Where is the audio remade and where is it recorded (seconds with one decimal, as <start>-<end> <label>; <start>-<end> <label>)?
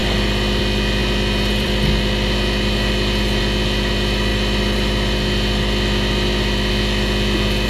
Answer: 0.0-0.6 remade; 0.6-1.0 recorded; 1.0-3.4 remade; 3.4-4.3 recorded; 4.3-6.7 remade; 6.7-7.7 recorded